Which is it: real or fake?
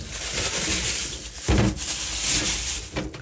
real